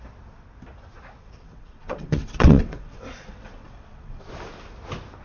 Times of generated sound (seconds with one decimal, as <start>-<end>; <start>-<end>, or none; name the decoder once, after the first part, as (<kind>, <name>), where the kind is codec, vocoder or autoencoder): 1.2-4.3 (vocoder, WaveNeXt)